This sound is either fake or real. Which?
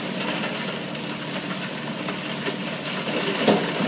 real